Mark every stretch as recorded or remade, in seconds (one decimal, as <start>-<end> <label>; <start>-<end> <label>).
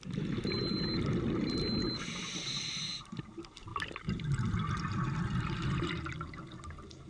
0.0-7.1 recorded